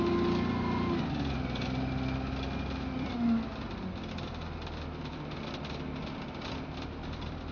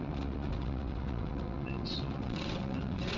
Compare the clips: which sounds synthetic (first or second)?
second